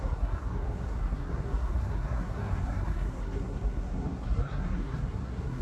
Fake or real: fake